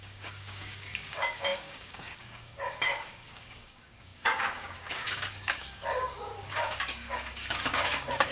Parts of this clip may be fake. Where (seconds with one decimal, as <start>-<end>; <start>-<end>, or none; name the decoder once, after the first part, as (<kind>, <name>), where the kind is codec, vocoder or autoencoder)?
0.0-8.3 (codec, DAC)